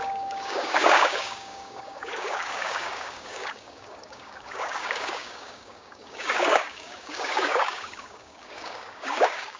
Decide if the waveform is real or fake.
fake